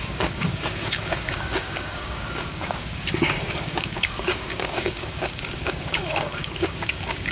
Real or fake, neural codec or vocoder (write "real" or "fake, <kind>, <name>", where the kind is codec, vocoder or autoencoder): fake, codec, DAC